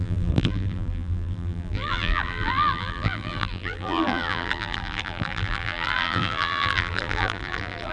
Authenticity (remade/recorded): remade